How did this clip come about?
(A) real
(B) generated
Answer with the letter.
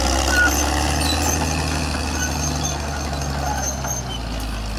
A